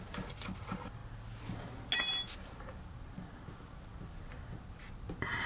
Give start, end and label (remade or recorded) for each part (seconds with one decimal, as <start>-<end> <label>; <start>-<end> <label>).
0.0-5.5 recorded